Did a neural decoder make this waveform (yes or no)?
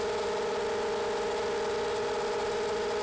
no